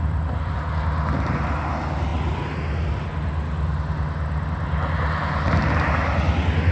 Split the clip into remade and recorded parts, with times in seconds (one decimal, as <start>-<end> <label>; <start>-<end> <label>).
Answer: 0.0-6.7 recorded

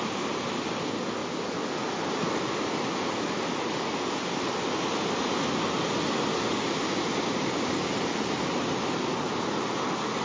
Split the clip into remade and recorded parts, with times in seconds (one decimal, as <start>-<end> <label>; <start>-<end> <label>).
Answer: 0.0-10.2 recorded

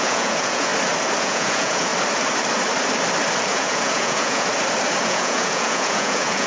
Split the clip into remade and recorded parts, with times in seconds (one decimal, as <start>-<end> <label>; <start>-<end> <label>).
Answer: 0.0-0.7 remade; 0.7-1.2 recorded; 1.2-1.9 remade; 1.9-3.5 recorded; 3.5-4.5 remade; 4.5-5.0 recorded; 5.0-6.5 remade

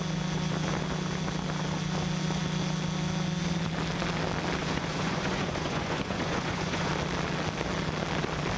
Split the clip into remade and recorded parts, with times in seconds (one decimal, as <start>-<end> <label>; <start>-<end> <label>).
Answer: 0.0-4.6 recorded; 4.6-6.9 remade; 6.9-8.6 recorded